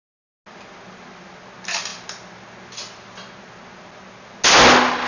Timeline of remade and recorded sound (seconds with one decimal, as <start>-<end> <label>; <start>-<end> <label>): 0.0-5.1 recorded